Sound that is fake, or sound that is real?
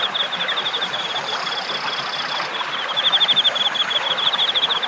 real